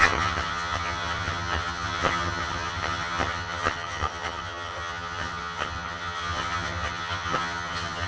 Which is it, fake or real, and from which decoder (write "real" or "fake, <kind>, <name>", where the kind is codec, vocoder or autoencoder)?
fake, vocoder, HiFi-GAN